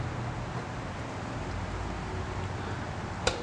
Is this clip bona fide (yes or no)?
yes